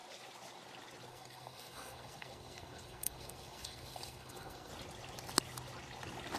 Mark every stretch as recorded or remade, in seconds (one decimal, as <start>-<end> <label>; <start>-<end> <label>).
0.0-1.1 recorded; 1.1-4.7 remade; 4.7-6.4 recorded

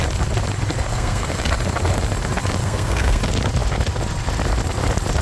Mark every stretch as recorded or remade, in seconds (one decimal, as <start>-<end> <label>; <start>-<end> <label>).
0.0-0.9 recorded; 0.9-1.4 remade; 1.4-2.6 recorded; 2.6-3.2 remade; 3.2-5.2 recorded